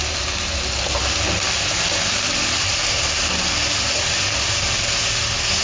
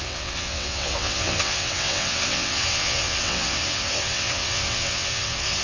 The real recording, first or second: first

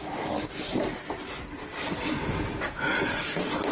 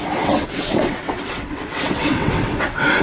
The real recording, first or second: first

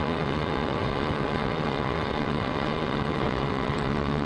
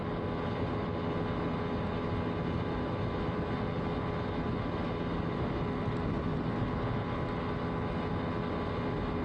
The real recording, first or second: second